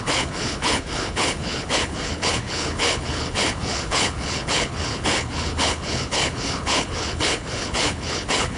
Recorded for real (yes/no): no